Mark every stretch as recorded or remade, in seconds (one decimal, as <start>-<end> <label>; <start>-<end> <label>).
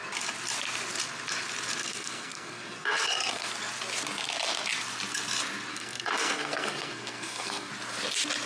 0.0-1.8 recorded; 1.8-3.5 remade; 3.5-5.7 recorded; 5.7-7.7 remade; 7.7-8.5 recorded